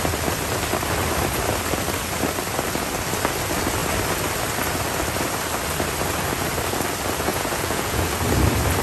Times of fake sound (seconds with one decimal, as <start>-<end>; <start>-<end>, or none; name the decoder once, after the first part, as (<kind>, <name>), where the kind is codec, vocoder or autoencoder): 7.3-8.1 (vocoder, Vocos)